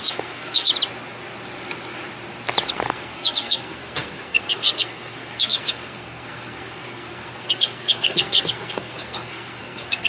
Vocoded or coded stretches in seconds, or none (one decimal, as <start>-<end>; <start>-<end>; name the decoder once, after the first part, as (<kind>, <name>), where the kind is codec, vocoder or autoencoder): 0.0-0.7 (codec, SNAC); 2.7-10.1